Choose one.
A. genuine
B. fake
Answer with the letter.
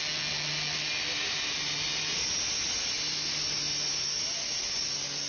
A